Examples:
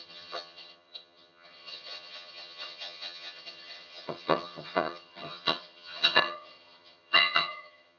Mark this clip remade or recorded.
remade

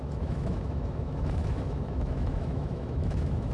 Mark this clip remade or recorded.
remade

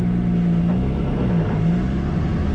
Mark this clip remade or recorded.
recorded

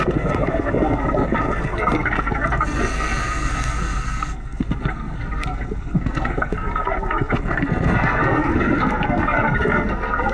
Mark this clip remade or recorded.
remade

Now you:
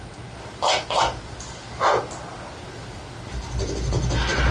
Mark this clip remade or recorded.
recorded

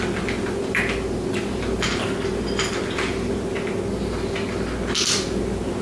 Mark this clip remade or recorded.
recorded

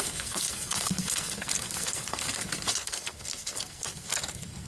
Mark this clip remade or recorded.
remade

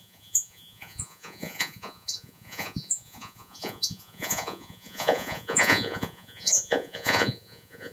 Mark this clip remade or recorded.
remade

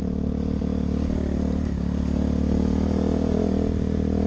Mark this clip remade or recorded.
recorded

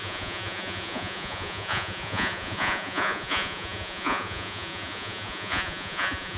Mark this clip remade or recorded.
remade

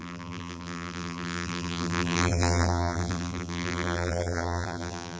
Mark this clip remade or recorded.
remade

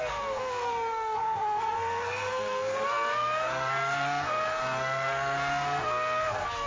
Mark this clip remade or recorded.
remade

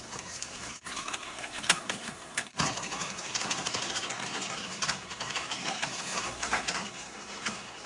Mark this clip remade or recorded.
remade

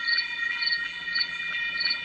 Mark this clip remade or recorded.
remade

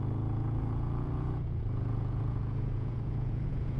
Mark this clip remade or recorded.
remade